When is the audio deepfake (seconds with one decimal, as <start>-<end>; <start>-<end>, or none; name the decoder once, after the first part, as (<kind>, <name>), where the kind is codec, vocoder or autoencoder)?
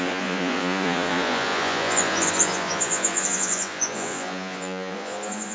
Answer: 0.0-5.5 (vocoder, Vocos)